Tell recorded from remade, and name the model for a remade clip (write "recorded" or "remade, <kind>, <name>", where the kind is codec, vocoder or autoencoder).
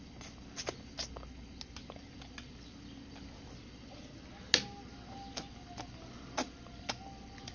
recorded